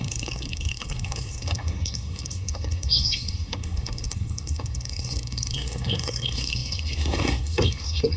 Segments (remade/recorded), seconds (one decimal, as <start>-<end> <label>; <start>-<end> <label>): 0.0-8.2 remade